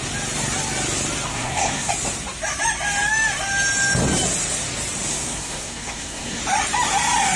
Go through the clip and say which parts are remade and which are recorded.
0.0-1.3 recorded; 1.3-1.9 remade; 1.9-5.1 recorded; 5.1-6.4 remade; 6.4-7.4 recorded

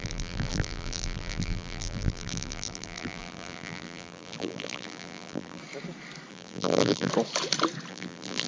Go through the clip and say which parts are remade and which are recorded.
0.0-5.6 remade; 5.6-6.3 recorded; 6.3-7.1 remade; 7.1-7.9 recorded; 7.9-8.5 remade

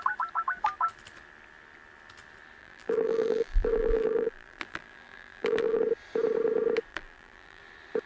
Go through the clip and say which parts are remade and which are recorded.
0.0-2.6 recorded; 2.6-5.8 remade; 5.8-6.9 recorded; 6.9-7.6 remade; 7.6-8.1 recorded

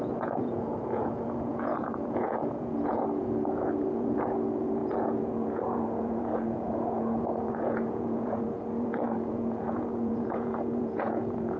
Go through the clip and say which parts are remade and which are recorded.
0.0-11.6 remade

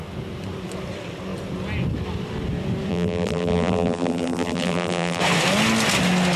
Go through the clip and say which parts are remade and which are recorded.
0.0-2.9 recorded; 2.9-5.2 remade; 5.2-6.4 recorded

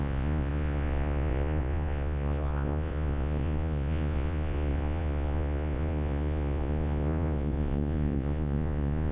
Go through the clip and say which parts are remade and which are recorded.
0.0-9.1 remade

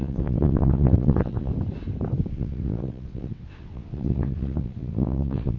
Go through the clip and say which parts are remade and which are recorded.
0.0-1.5 remade; 1.5-2.3 recorded; 2.3-5.6 remade

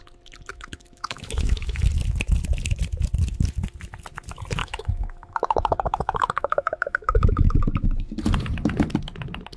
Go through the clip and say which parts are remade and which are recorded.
0.0-0.5 recorded; 0.5-1.9 remade; 1.9-4.6 recorded; 4.6-7.6 remade; 7.6-9.6 recorded